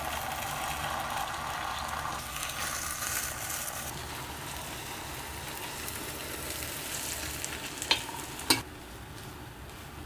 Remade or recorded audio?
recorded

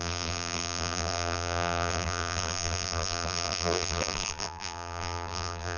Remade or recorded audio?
remade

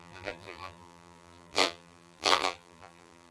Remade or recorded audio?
remade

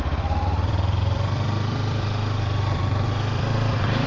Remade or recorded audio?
remade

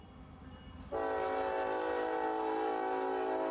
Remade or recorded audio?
recorded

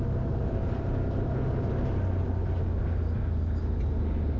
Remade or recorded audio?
recorded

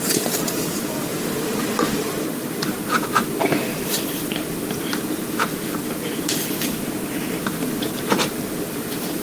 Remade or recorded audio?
remade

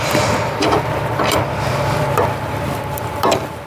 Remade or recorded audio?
remade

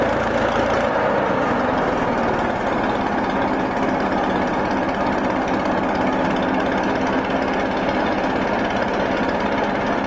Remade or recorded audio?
recorded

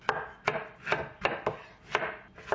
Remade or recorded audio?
recorded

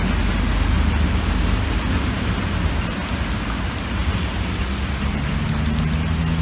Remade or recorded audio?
recorded